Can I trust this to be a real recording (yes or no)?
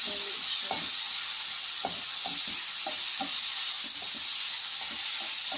yes